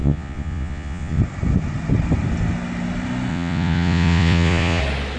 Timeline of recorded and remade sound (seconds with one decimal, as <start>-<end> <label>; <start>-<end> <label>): 0.0-1.2 remade; 1.2-3.3 recorded; 3.3-4.8 remade; 4.8-5.2 recorded